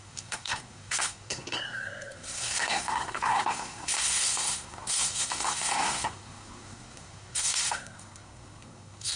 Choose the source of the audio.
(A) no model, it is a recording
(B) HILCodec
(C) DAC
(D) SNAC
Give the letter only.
D